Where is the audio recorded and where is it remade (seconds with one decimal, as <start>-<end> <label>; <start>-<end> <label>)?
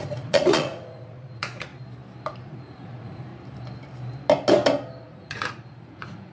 0.0-1.7 remade; 1.7-2.4 recorded; 2.4-3.3 remade; 3.3-5.0 recorded; 5.0-6.3 remade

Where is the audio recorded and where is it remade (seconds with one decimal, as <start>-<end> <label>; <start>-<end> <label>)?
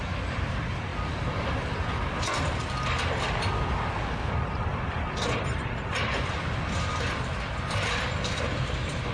0.0-9.1 recorded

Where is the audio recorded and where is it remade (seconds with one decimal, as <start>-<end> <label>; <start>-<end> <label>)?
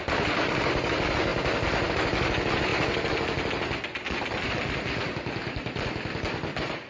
0.0-6.9 recorded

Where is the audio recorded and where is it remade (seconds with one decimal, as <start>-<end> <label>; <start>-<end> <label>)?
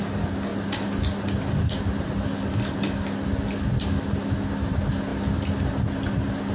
0.0-6.5 recorded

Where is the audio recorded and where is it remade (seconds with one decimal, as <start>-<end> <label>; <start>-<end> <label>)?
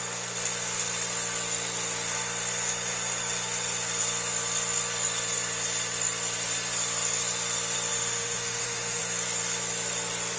0.0-7.9 recorded; 7.9-9.0 remade; 9.0-10.4 recorded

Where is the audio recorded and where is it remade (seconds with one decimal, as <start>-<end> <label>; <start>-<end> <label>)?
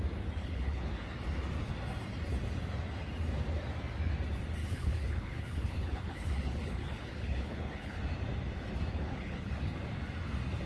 0.0-0.4 recorded; 0.4-0.9 remade; 0.9-4.6 recorded; 4.6-8.0 remade; 8.0-8.9 recorded; 8.9-9.5 remade; 9.5-10.7 recorded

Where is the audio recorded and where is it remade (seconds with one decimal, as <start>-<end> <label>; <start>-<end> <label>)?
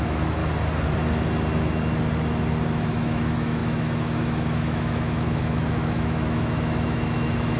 0.0-0.4 remade; 0.4-2.7 recorded; 2.7-7.6 remade